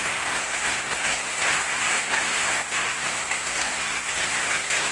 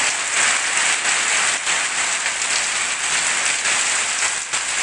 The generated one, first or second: first